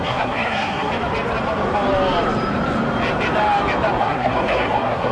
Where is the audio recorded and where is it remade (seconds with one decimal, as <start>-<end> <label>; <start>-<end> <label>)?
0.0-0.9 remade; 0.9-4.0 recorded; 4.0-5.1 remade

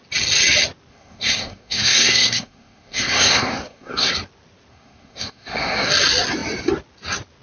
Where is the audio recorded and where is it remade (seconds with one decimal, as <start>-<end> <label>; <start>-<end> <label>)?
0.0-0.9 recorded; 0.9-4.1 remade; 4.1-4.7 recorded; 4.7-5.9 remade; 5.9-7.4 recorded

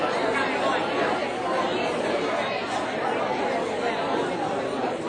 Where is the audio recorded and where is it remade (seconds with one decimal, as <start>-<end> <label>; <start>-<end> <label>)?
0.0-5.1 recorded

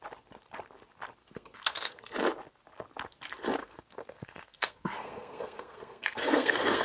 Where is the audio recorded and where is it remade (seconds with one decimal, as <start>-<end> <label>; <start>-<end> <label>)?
0.0-1.2 recorded; 1.2-2.0 remade; 2.0-3.6 recorded; 3.6-6.8 remade